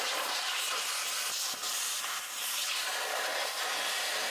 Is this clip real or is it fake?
real